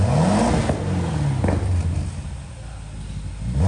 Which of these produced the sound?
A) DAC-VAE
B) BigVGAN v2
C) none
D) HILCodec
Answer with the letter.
C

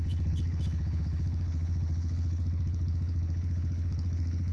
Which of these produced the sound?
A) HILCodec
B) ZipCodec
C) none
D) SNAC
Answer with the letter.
A